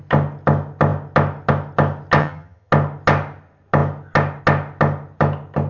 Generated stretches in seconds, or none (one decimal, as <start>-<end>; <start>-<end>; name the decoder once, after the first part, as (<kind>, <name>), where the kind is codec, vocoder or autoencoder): 2.2-2.7 (vocoder, HiFi-GAN)